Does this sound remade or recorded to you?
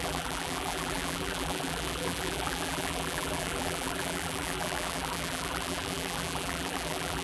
remade